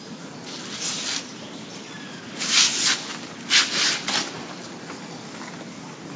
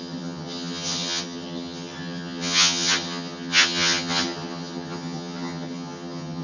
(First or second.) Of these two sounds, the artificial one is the second